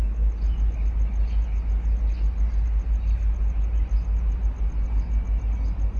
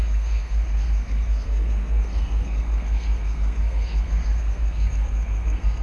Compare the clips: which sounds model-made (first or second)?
second